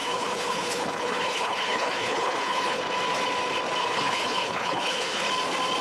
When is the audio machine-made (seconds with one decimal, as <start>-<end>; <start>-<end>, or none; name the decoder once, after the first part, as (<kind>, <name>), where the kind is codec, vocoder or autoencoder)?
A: 0.0-2.8 (codec, HILCodec); 3.8-5.3

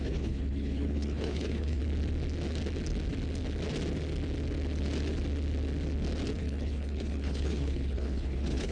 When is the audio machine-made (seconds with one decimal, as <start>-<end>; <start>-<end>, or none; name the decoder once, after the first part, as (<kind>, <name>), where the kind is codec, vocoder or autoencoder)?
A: 0.0-1.8 (codec, HILCodec); 6.4-8.7

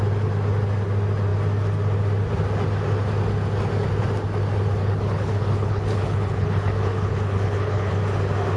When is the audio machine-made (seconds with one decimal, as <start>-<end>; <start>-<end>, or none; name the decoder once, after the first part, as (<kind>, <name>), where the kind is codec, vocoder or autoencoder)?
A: 4.8-8.0 (codec, HILCodec)

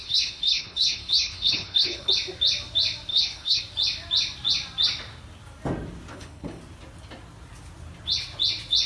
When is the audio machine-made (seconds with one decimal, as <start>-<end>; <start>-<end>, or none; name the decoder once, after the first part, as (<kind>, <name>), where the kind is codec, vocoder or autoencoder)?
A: 0.0-2.1 (codec, HILCodec); 3.1-3.6; 6.1-6.6

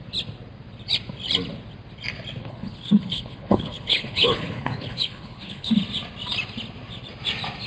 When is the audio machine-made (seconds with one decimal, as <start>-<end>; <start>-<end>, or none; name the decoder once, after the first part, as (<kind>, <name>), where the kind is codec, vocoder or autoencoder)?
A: 2.4-5.7 (codec, HILCodec)